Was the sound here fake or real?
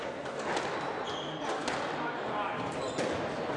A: real